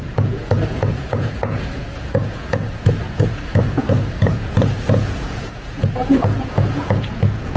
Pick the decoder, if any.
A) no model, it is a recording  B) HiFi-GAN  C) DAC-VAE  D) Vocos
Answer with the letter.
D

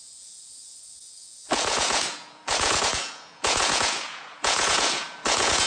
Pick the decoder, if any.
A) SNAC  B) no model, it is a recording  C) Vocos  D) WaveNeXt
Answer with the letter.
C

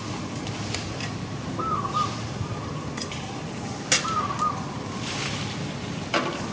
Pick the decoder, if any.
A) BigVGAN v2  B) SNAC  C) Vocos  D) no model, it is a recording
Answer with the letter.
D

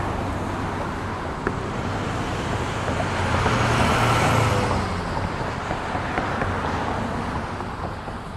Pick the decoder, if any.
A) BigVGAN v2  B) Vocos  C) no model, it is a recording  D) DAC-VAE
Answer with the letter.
C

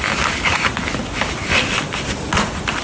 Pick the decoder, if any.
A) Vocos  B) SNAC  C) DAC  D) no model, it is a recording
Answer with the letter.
D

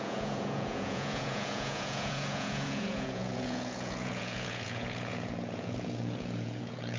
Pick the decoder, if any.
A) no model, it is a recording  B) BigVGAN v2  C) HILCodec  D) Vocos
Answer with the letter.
D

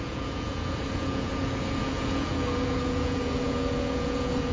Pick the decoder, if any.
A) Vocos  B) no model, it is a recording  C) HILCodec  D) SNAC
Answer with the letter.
A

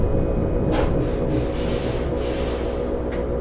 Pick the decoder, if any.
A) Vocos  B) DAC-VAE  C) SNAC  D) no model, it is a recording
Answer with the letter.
D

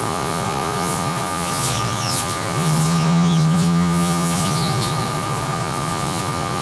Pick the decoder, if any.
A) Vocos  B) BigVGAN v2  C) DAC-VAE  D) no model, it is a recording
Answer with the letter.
A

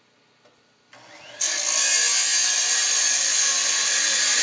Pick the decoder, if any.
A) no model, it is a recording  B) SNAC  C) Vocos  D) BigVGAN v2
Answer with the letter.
A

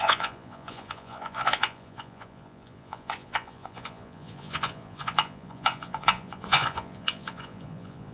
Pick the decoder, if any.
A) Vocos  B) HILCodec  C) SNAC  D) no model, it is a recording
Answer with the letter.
A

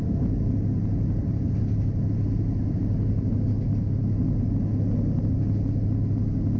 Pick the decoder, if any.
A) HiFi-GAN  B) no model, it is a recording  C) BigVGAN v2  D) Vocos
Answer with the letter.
B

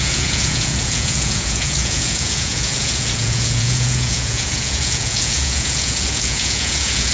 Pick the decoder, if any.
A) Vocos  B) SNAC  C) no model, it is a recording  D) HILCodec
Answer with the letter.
A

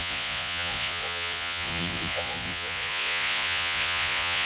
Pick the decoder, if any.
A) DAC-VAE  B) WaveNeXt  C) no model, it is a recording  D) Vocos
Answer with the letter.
D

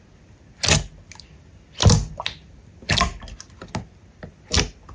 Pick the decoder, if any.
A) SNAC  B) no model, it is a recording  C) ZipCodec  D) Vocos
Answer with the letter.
B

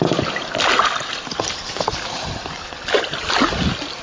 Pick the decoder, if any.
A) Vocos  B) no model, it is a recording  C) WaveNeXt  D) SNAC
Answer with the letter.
B